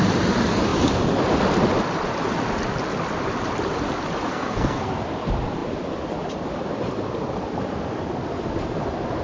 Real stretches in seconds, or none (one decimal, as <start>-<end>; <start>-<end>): 0.0-4.3; 4.9-9.2